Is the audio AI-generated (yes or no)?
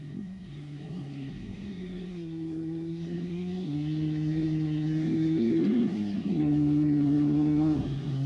yes